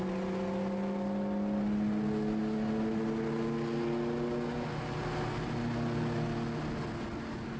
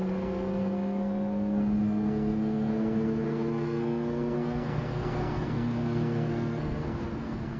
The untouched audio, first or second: first